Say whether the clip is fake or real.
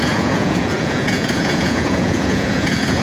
fake